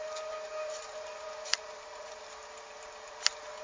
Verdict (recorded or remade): remade